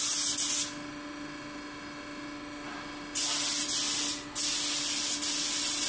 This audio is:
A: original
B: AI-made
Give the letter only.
A